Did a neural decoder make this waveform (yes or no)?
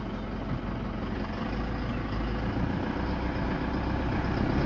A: no